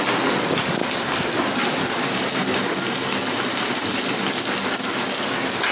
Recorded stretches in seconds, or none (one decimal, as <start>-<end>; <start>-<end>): 0.0-0.8; 4.2-5.7